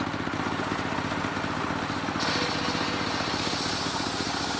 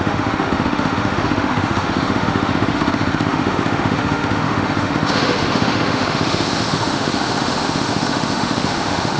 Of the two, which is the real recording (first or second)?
first